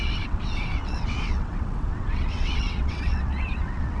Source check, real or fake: fake